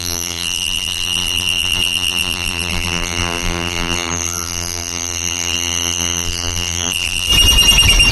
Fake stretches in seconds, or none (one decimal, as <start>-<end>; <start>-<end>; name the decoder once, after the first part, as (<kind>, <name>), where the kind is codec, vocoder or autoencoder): 0.0-7.3 (vocoder, BigVGAN v2)